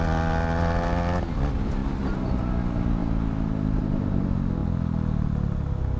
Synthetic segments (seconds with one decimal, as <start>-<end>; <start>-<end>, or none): none